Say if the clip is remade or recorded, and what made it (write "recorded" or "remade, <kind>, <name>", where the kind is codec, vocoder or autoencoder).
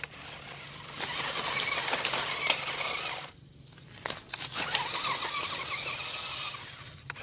recorded